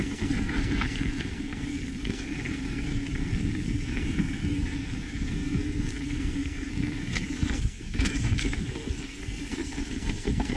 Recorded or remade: remade